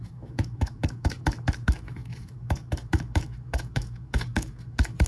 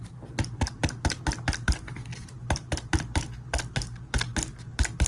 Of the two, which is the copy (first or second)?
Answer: first